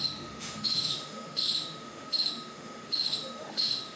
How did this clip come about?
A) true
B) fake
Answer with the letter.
B